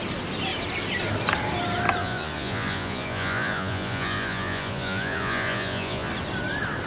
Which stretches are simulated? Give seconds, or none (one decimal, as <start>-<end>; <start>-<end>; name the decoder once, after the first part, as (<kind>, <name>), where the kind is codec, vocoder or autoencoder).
2.0-6.1 (vocoder, Vocos)